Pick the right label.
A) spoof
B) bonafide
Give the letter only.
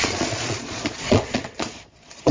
A